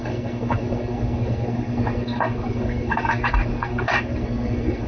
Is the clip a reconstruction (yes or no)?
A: yes